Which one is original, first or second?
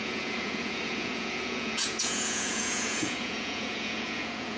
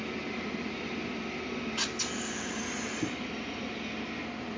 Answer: second